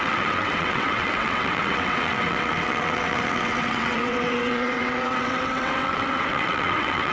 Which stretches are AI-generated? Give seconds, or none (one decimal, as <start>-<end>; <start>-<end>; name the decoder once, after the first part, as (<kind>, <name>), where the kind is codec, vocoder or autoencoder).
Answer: 0.0-7.1 (vocoder, WaveNeXt)

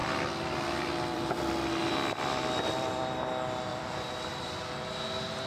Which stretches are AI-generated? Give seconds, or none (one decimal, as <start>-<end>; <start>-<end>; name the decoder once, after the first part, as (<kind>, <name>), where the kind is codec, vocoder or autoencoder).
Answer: 0.0-3.2 (vocoder, BigVGAN v2); 3.7-4.4

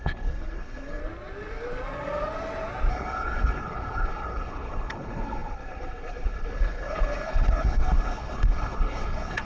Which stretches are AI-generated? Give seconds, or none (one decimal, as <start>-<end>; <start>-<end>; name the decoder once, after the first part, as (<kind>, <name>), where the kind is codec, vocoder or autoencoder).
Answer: 0.0-1.0 (codec, HILCodec); 2.9-9.4

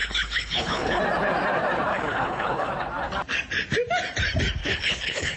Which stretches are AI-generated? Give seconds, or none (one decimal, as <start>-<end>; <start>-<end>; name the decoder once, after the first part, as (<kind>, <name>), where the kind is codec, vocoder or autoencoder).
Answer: 0.0-1.0 (codec, HILCodec); 1.9-2.7; 4.6-5.4

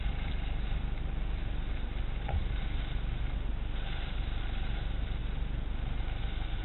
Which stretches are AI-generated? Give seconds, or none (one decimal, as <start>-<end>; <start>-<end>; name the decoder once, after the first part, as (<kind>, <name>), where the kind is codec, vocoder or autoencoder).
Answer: none

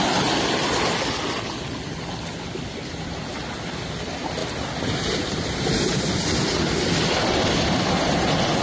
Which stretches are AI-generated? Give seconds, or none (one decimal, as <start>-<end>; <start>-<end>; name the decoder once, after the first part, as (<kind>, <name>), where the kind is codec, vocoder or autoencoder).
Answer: none

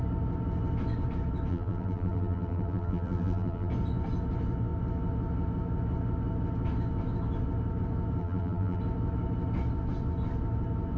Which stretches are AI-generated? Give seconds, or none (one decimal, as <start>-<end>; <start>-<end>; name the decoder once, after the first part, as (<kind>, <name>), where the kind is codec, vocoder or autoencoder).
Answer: 1.5-3.7 (vocoder, BigVGAN v2); 8.2-8.8

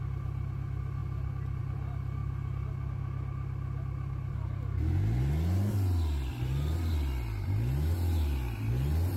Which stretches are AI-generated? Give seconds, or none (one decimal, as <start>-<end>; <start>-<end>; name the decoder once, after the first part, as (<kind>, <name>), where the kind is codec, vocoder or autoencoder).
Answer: none